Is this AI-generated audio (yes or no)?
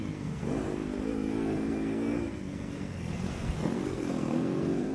yes